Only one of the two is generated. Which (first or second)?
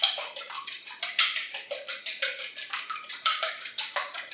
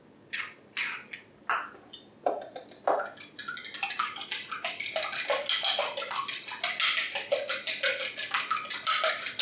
first